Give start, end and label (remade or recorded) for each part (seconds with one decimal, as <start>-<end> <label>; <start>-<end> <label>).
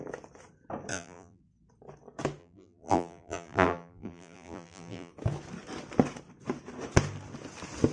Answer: 0.0-0.9 recorded; 0.9-1.4 remade; 1.4-2.4 recorded; 2.4-5.1 remade; 5.1-7.9 recorded